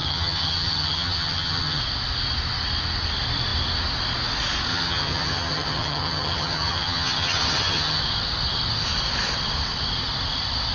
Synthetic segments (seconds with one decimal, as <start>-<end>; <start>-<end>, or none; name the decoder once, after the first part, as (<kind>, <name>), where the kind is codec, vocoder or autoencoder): 0.0-1.8 (vocoder, HiFi-GAN); 4.7-8.0